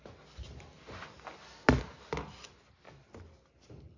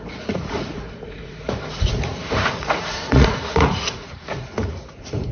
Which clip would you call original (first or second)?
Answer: first